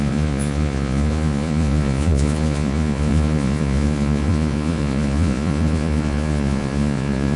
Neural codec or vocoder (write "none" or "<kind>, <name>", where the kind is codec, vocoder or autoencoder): vocoder, Vocos